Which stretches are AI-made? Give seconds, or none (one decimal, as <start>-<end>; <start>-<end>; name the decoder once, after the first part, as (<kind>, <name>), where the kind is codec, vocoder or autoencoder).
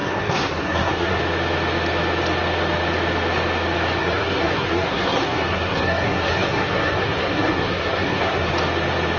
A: 0.0-1.2 (codec, SNAC); 4.0-8.5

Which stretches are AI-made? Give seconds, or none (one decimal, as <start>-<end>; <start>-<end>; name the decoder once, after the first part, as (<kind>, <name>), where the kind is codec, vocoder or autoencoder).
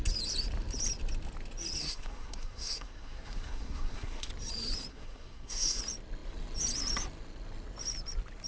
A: 1.8-4.3 (codec, SNAC); 4.9-5.8